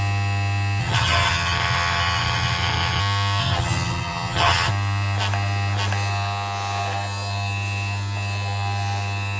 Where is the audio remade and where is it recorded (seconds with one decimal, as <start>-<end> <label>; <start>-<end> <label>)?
0.0-0.8 recorded; 0.8-3.0 remade; 3.0-3.4 recorded; 3.4-4.7 remade; 4.7-9.4 recorded